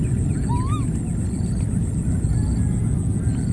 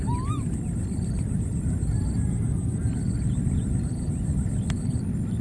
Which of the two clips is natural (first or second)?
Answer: first